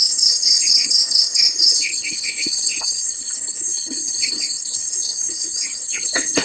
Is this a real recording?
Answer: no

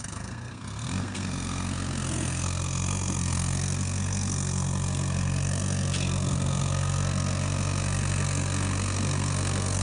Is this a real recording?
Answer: no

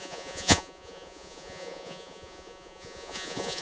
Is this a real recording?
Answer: no